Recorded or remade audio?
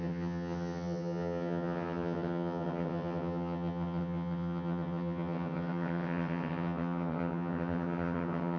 remade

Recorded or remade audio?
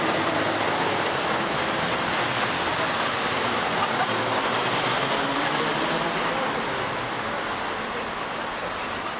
recorded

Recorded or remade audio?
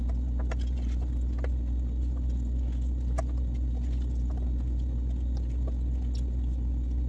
recorded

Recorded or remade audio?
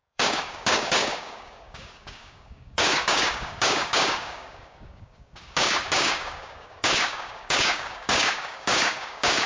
remade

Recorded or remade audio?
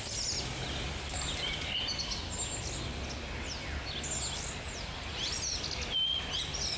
recorded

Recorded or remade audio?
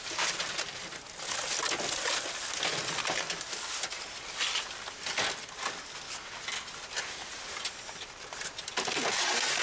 recorded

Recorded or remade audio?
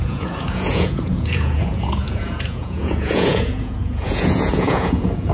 remade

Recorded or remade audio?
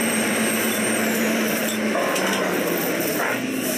remade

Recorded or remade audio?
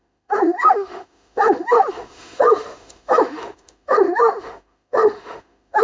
remade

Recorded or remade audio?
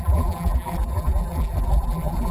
remade